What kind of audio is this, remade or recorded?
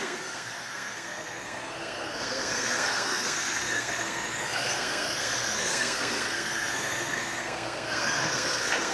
remade